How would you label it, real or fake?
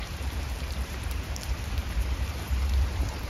fake